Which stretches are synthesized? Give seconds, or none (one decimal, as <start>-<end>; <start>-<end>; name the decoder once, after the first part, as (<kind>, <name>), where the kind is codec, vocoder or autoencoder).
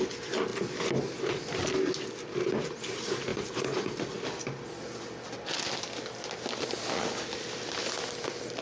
none